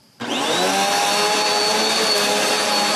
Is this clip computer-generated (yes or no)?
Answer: no